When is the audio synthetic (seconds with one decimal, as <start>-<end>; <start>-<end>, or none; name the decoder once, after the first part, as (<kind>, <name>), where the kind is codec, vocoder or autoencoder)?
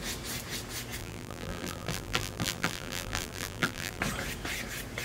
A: 1.0-4.0 (vocoder, BigVGAN v2)